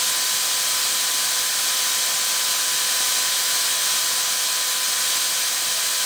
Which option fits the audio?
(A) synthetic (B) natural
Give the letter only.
B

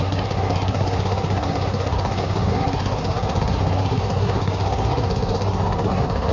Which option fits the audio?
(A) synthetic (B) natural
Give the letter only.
A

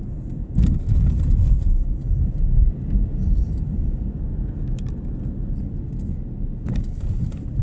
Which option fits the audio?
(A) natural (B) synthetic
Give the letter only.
A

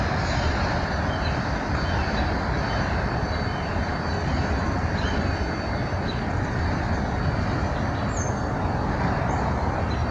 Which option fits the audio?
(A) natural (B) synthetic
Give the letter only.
A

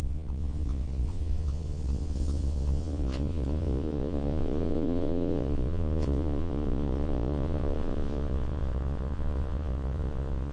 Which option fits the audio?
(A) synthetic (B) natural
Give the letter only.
A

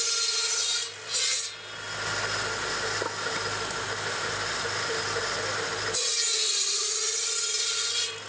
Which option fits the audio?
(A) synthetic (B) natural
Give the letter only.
B